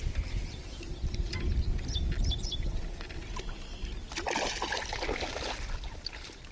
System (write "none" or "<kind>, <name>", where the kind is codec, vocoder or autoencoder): vocoder, BigVGAN v2